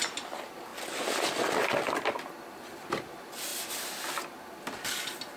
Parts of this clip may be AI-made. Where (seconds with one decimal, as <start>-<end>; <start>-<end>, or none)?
none

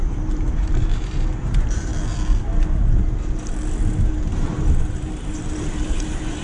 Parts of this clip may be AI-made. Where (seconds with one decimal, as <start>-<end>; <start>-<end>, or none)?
0.0-1.9; 4.1-6.4